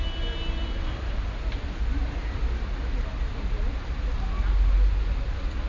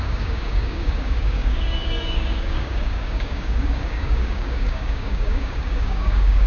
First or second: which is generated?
second